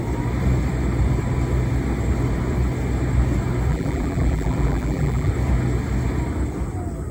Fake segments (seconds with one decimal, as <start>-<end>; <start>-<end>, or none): 3.7-5.3